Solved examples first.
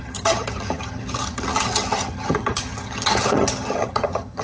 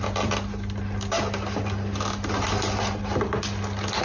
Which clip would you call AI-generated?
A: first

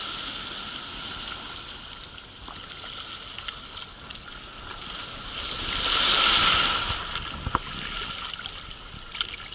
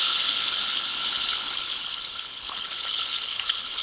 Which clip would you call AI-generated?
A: second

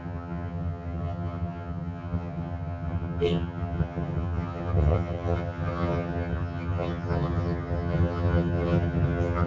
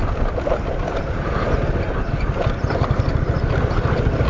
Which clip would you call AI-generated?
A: first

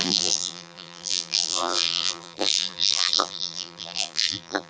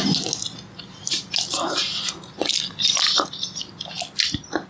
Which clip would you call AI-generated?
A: first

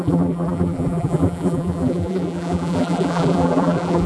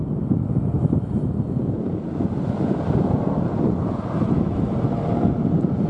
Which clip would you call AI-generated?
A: first